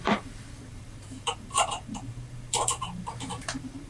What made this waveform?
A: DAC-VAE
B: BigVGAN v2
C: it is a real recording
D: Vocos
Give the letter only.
B